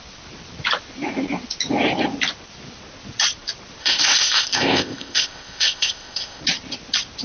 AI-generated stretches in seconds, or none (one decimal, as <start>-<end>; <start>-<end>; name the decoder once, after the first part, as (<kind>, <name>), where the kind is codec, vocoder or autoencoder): 3.8-6.4 (codec, ZipCodec)